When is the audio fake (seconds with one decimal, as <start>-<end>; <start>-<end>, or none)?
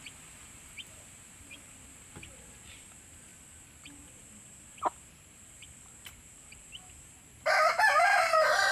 0.0-3.3; 5.1-8.7